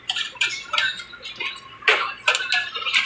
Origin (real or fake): fake